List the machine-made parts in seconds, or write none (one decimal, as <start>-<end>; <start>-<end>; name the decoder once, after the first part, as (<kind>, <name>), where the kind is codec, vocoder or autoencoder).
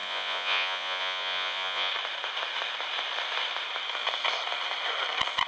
0.0-1.9 (vocoder, Vocos)